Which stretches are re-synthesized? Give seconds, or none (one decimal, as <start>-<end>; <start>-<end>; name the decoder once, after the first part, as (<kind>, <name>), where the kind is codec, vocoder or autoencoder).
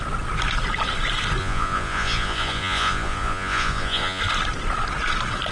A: 1.4-4.2 (vocoder, Vocos)